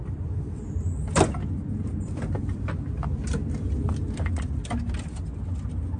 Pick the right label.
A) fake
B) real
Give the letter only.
B